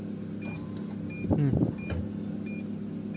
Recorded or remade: recorded